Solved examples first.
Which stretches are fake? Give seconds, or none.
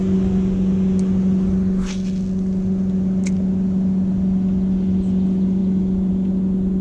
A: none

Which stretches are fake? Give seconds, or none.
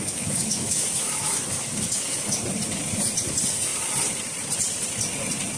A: 0.0-2.4 (autoencoder, DAC-VAE)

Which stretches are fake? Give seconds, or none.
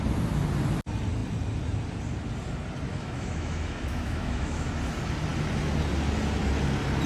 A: 2.9-4.7 (autoencoder, DAC-VAE)